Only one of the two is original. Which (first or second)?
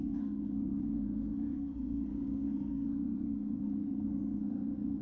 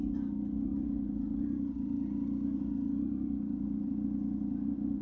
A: second